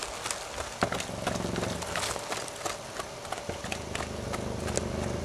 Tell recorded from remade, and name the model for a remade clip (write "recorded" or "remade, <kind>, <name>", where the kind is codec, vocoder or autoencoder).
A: recorded